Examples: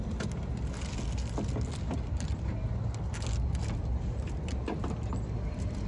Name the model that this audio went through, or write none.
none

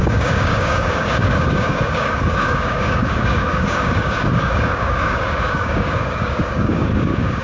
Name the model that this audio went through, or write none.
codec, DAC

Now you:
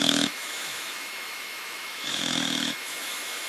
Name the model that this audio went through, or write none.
autoencoder, DAC-VAE